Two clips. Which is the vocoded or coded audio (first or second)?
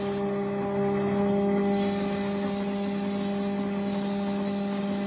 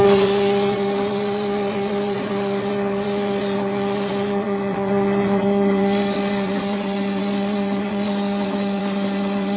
second